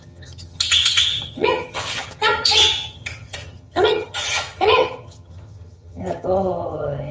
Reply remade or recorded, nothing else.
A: remade